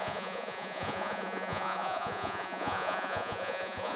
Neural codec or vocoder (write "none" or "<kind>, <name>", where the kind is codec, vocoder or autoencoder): vocoder, Vocos